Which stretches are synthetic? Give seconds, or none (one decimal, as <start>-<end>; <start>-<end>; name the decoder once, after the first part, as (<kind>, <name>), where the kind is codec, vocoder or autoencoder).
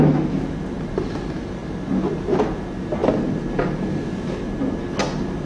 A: none